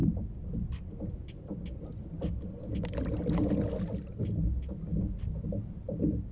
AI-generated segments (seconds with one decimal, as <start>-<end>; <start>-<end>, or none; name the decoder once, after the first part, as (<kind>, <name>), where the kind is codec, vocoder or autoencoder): none

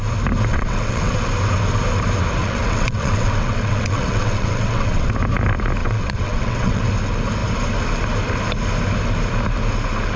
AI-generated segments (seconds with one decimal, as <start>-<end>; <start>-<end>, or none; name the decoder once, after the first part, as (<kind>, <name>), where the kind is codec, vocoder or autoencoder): 0.5-1.2 (vocoder, WaveNeXt); 2.4-5.1; 5.8-6.8

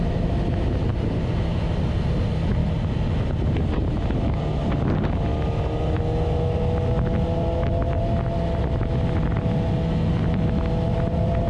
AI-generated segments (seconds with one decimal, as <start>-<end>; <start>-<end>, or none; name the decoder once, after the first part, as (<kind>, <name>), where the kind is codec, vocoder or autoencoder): none

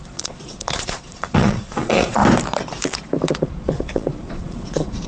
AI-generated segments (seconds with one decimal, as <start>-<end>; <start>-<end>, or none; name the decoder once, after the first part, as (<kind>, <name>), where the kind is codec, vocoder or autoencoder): 0.0-2.2 (vocoder, Vocos); 3.3-5.1

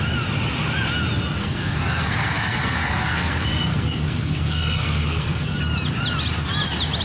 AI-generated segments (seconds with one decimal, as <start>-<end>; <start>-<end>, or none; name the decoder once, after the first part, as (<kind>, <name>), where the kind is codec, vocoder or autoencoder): 1.4-5.6 (codec, SNAC)

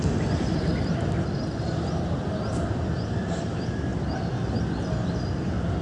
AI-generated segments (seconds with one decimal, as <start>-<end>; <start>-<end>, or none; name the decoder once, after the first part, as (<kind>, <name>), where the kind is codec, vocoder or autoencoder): none

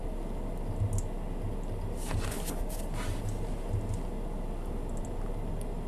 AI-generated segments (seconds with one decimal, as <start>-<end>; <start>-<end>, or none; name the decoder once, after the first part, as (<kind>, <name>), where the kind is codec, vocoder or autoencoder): none